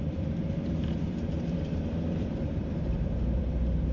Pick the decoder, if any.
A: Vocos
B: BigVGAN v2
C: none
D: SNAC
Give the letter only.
B